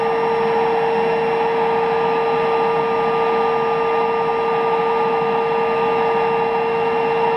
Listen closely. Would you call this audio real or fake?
real